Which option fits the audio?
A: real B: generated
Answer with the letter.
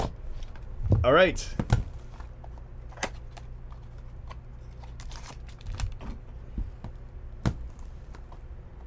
A